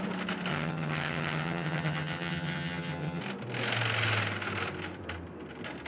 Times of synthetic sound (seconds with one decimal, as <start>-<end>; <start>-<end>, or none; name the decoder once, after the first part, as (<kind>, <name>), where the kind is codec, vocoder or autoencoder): 0.5-3.2 (vocoder, HiFi-GAN)